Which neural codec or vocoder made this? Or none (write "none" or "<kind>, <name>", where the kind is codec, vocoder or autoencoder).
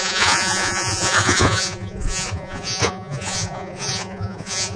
vocoder, Vocos